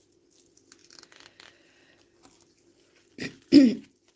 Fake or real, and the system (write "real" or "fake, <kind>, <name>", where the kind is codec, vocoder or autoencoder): real